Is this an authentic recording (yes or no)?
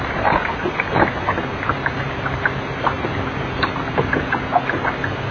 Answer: yes